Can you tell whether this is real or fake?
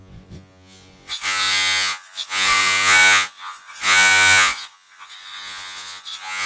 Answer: fake